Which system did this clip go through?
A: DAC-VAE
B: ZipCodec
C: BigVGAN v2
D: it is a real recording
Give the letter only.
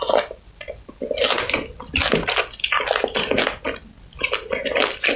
D